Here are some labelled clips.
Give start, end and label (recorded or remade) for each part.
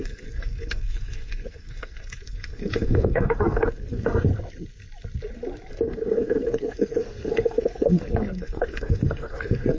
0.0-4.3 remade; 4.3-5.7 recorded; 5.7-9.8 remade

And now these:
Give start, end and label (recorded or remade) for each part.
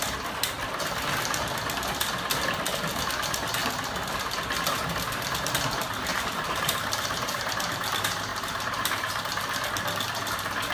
0.0-6.1 recorded; 6.1-7.5 remade; 7.5-8.3 recorded; 8.3-9.2 remade; 9.2-10.7 recorded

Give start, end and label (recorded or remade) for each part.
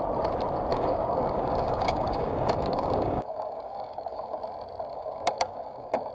0.0-0.7 recorded; 0.7-4.4 remade; 4.4-4.9 recorded; 4.9-6.1 remade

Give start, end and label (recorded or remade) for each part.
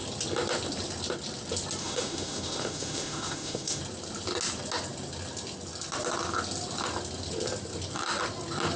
0.0-1.8 recorded; 1.8-3.8 remade; 3.8-8.8 recorded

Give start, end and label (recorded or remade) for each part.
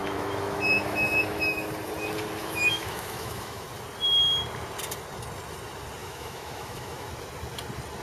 0.0-1.7 remade; 1.7-2.4 recorded; 2.4-3.6 remade; 3.6-6.0 recorded; 6.0-7.1 remade; 7.1-8.0 recorded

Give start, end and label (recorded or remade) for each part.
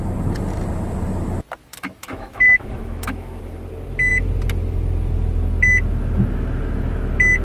0.0-1.7 recorded; 1.7-3.4 remade; 3.4-7.4 recorded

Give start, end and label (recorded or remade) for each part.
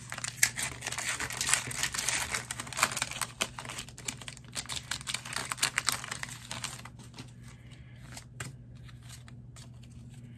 0.0-10.4 recorded